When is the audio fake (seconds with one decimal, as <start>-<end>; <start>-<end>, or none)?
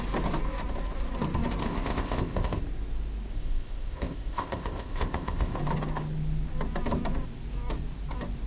1.6-2.6; 3.3-5.6